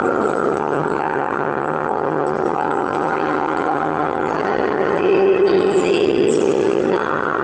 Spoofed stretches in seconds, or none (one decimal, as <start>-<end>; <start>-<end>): 0.0-7.4